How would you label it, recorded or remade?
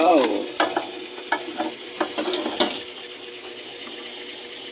recorded